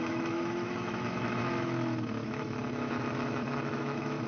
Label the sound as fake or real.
fake